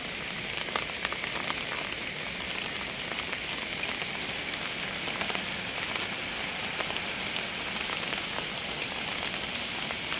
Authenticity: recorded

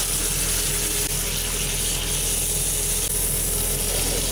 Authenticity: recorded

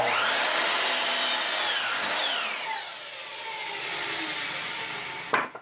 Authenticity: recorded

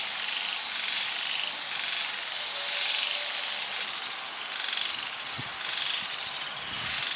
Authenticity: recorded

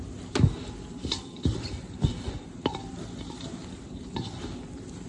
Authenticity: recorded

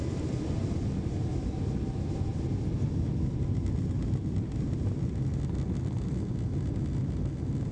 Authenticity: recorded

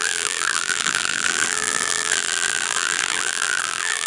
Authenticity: remade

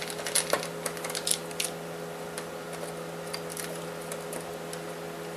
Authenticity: recorded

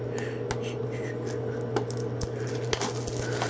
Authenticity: recorded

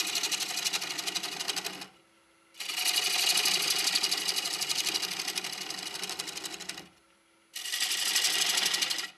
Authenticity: recorded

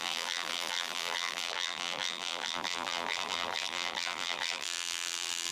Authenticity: remade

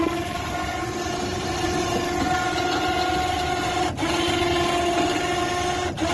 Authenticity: recorded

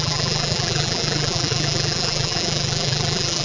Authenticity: remade